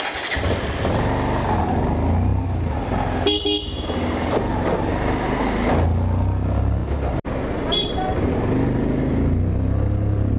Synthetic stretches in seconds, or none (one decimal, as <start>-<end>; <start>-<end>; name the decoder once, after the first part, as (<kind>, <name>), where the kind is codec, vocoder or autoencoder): none